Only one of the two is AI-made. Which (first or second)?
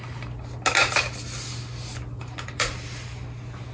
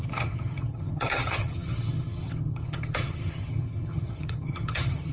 second